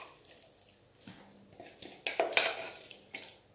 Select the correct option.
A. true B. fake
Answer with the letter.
A